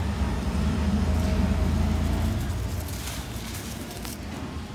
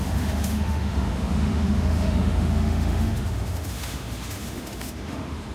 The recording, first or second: first